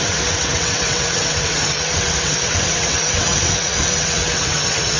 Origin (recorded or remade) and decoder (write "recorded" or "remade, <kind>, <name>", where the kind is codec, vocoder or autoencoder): remade, vocoder, WaveNeXt